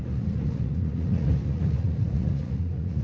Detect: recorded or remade remade